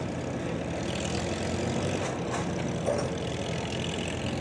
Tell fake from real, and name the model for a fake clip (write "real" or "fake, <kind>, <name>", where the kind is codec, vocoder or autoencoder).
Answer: real